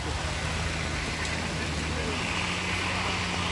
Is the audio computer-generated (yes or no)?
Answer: no